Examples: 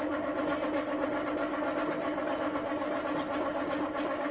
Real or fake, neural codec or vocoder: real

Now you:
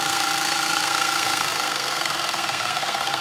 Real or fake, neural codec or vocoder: fake, codec, SNAC